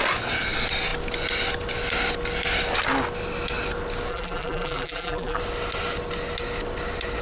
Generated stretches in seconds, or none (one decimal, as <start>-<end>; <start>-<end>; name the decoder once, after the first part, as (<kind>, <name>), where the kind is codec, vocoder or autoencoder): 4.1-5.4 (vocoder, BigVGAN v2)